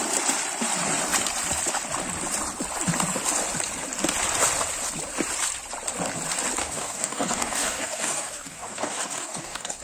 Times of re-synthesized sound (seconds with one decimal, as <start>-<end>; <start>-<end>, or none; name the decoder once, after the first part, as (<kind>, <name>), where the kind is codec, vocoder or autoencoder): 6.6-9.8 (codec, DAC)